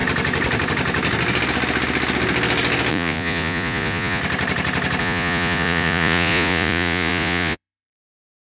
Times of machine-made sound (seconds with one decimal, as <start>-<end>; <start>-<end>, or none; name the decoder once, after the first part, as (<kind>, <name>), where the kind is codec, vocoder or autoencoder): 2.9-4.2 (vocoder, Vocos); 5.0-8.6

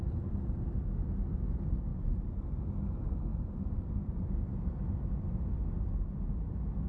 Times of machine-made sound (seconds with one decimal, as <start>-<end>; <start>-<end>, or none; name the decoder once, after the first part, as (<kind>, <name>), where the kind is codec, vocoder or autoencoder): 1.9-2.5 (vocoder, BigVGAN v2); 3.3-4.7

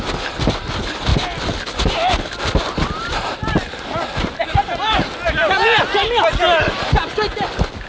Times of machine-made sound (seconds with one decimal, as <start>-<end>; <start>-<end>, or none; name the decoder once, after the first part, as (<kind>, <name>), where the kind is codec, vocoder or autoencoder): 1.1-2.1 (vocoder, BigVGAN v2)

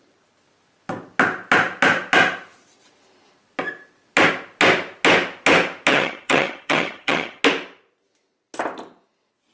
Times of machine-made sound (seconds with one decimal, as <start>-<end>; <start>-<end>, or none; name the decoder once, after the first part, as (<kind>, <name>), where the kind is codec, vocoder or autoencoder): 5.9-7.4 (vocoder, HiFi-GAN)

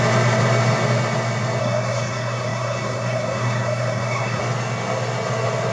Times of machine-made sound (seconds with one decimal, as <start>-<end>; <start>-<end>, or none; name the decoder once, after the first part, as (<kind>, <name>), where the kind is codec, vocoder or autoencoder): 1.6-4.4 (codec, SNAC)